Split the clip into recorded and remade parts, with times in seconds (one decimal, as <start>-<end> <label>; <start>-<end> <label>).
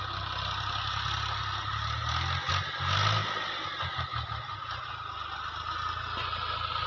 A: 0.0-6.9 recorded